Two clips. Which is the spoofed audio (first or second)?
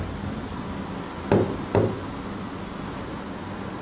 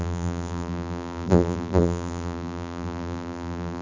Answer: second